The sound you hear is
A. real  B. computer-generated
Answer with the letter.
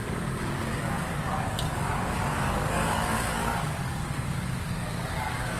B